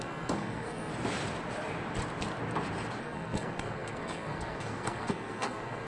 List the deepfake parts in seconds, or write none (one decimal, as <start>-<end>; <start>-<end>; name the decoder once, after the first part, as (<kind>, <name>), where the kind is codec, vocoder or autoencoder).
0.0-0.9 (codec, SNAC); 3.0-5.9